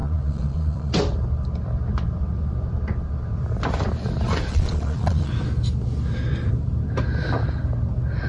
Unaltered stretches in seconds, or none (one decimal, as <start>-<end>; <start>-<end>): 0.9-4.5; 5.3-8.3